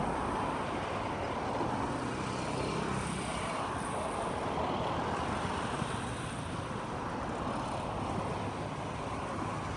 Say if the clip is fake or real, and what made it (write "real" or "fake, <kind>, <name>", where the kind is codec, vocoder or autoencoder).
real